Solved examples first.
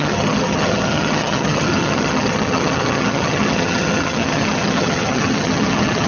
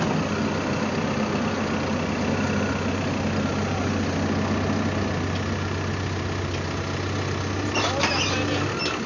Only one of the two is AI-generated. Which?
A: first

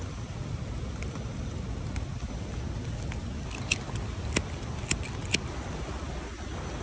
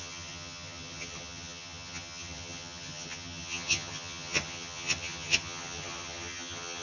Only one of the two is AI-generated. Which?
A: second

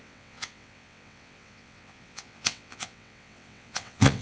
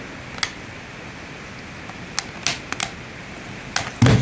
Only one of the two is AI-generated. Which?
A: first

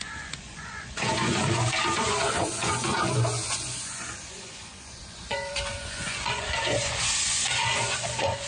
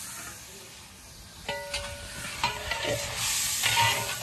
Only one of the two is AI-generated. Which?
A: first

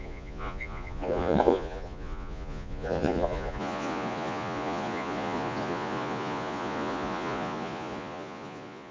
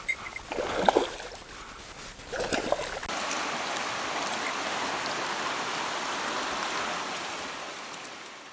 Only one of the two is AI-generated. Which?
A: first